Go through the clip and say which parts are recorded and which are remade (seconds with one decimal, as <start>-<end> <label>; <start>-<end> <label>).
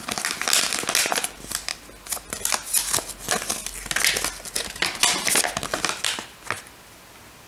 0.0-7.5 recorded